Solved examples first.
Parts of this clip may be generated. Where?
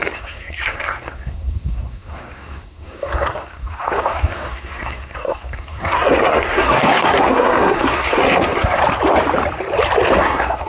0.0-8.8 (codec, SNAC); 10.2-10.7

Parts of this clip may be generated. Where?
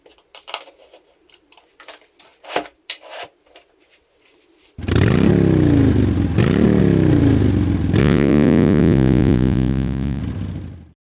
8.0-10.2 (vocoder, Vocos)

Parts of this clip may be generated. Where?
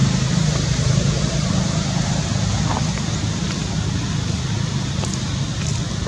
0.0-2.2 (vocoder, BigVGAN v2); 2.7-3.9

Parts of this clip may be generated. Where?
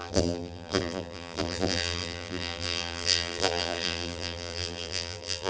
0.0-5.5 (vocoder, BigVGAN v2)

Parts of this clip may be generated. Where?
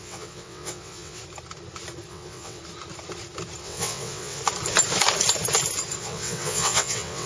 0.0-1.2 (vocoder, WaveNeXt); 2.1-2.6; 3.6-4.4; 6.0-7.3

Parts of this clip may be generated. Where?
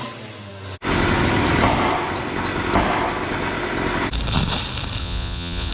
5.0-5.7 (vocoder, Vocos)